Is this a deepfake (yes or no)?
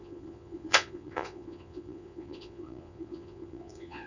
yes